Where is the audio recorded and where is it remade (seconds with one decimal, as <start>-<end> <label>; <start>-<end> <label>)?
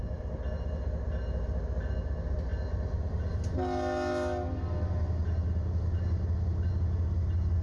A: 0.0-7.6 recorded